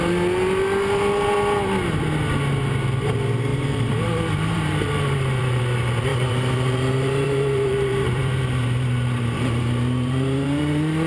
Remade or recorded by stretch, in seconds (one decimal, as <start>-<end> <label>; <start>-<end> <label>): 0.0-3.5 recorded; 3.5-5.6 remade; 5.6-6.1 recorded; 6.1-11.1 remade